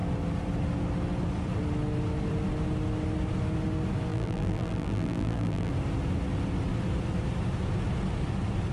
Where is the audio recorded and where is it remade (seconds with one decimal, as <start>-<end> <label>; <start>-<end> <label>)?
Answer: 0.0-4.1 recorded; 4.1-5.7 remade; 5.7-8.7 recorded